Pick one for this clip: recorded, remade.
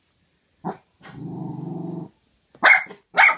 recorded